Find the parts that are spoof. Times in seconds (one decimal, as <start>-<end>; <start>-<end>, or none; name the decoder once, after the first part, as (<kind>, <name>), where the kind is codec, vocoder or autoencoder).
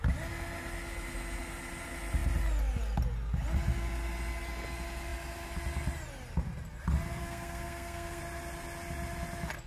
7.2-8.2 (codec, SNAC)